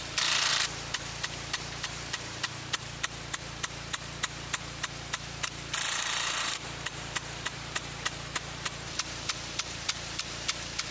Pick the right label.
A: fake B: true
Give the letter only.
A